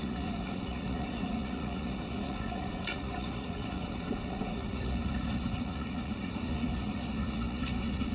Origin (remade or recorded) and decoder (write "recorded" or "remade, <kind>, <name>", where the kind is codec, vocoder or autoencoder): remade, vocoder, Vocos